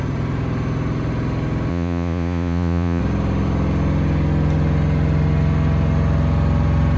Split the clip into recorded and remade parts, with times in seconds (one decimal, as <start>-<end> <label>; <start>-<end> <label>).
0.0-1.7 recorded; 1.7-3.0 remade; 3.0-7.0 recorded